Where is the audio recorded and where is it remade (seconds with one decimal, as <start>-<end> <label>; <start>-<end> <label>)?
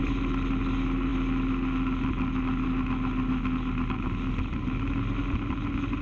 0.0-6.0 recorded